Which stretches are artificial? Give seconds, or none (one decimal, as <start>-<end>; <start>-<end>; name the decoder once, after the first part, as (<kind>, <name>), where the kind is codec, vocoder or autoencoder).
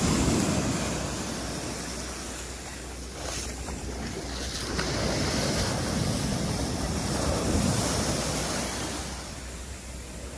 6.3-7.0 (vocoder, BigVGAN v2); 8.4-9.8